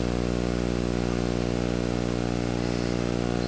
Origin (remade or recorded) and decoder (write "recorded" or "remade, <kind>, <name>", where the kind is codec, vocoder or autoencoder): recorded